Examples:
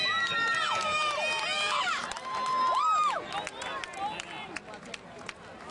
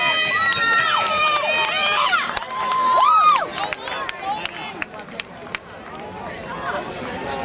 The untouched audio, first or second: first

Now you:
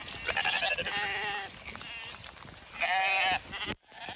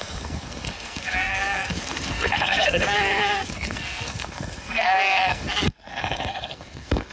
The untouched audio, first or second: first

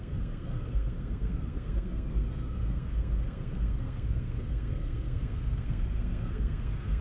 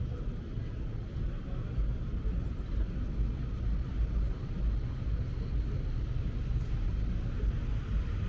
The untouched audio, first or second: second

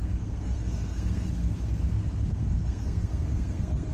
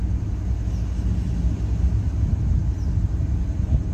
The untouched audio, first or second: second